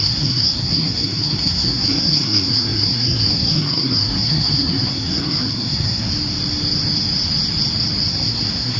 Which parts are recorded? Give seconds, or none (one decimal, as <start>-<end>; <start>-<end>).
6.1-8.1